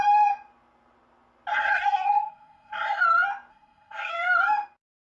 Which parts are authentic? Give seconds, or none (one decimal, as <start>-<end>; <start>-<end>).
0.0-1.5; 3.0-3.5; 4.1-5.1